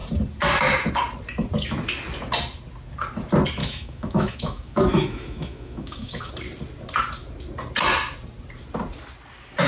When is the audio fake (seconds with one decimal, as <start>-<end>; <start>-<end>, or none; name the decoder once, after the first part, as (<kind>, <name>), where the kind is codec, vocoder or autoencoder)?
3.6-6.3 (autoencoder, DAC-VAE)